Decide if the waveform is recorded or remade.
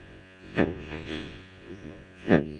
remade